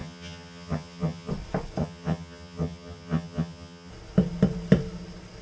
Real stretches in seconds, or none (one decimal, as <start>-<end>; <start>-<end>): 1.3-1.8; 3.9-5.4